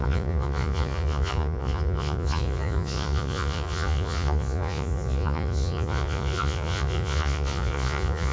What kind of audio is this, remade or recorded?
remade